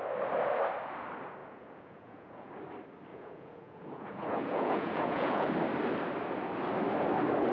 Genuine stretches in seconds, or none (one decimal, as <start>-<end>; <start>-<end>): 0.0-1.4; 2.5-3.1; 5.5-7.5